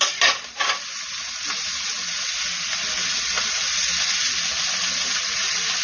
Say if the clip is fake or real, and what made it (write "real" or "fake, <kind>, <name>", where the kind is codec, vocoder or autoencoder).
real